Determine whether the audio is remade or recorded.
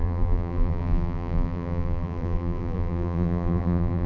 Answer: remade